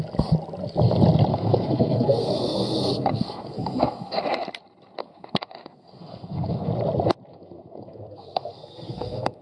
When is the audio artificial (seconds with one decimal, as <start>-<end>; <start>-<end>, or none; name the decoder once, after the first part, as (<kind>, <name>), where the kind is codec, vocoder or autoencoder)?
1.3-4.2 (codec, SNAC); 5.0-6.7; 7.3-9.4